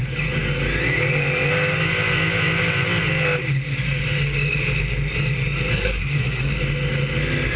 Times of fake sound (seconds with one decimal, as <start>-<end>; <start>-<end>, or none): 5.7-6.5